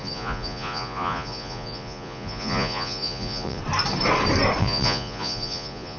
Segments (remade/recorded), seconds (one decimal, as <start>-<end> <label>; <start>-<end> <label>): 0.0-3.6 remade; 3.6-4.6 recorded; 4.6-6.0 remade